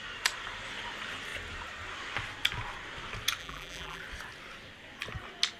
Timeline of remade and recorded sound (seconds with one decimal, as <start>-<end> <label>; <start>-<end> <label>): 0.0-3.4 recorded; 3.4-4.0 remade; 4.0-5.6 recorded